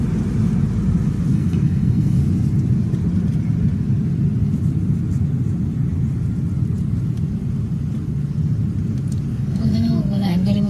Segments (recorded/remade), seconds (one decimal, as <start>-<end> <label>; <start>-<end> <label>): 0.0-1.3 recorded; 1.3-2.2 remade; 2.2-9.3 recorded; 9.3-10.7 remade